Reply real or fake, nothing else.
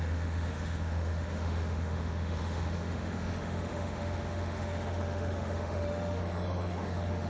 fake